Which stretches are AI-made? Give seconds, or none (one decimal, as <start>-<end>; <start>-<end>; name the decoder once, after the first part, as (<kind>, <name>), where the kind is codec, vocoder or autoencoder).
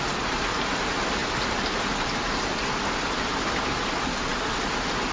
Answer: none